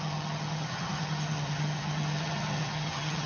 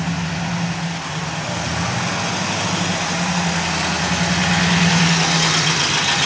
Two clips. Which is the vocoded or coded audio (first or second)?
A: first